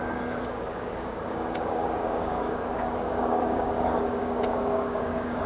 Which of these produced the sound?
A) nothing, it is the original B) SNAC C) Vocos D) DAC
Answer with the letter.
D